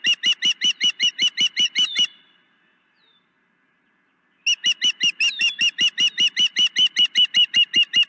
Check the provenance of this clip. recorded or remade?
recorded